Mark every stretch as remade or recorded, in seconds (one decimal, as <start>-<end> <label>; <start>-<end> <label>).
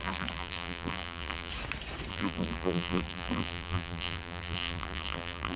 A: 0.0-1.5 remade; 1.5-2.1 recorded; 2.1-5.6 remade